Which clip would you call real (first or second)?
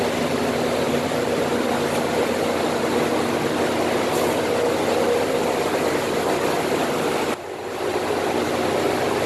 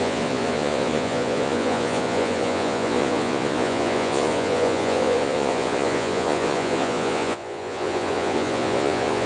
first